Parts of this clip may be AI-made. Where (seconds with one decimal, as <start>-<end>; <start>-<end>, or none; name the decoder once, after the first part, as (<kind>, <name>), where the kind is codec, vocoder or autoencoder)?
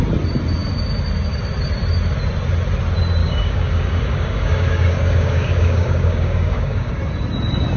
3.2-6.9 (codec, DAC)